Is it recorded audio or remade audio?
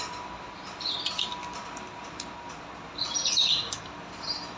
recorded